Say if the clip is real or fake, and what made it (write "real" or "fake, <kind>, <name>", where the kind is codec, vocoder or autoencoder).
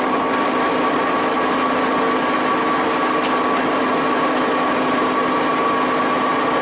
real